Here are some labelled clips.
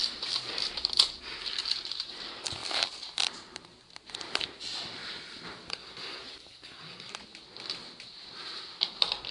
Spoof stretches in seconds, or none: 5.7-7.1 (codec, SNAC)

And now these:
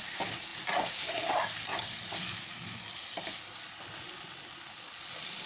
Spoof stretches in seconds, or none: none